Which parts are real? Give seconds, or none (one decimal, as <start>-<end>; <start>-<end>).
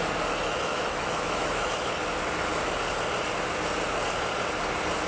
0.0-0.4; 1.7-5.1